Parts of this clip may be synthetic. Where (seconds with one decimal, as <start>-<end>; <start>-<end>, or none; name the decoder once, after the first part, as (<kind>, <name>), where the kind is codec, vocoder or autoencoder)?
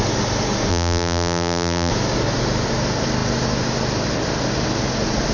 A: 0.7-1.9 (vocoder, BigVGAN v2)